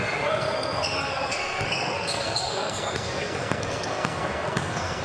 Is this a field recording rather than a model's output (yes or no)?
no